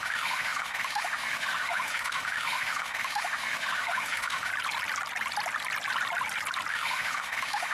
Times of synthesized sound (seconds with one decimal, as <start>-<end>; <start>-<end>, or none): 0.0-4.5; 6.7-7.7